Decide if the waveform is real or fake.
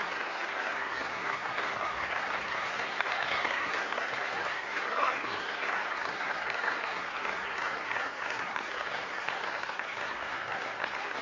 fake